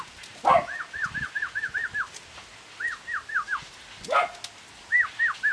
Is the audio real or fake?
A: real